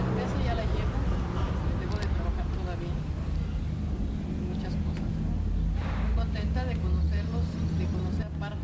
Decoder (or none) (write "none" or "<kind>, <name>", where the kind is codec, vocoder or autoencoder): none